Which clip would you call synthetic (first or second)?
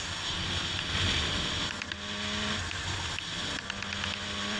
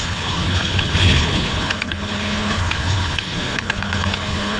second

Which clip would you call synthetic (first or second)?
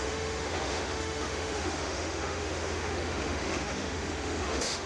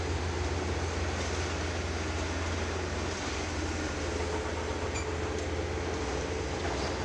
first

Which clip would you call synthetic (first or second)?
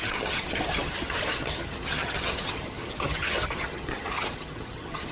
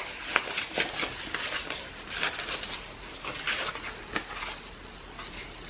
first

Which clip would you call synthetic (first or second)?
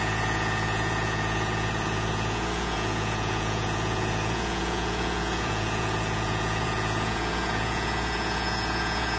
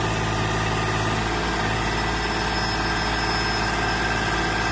first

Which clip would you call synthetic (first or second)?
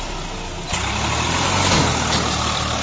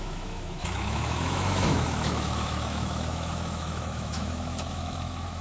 second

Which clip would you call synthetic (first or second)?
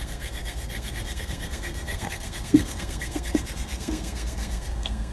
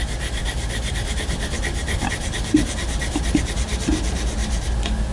first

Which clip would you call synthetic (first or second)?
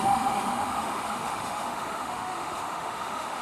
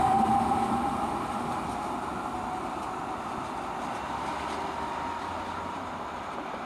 first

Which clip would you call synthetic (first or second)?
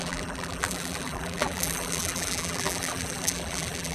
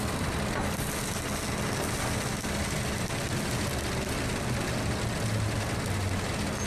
first